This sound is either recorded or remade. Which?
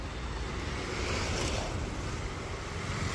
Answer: recorded